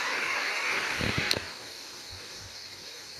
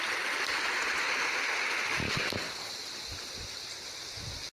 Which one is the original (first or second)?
second